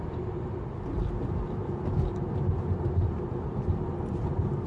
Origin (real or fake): real